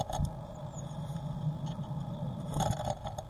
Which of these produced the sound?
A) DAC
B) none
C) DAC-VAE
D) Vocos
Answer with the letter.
B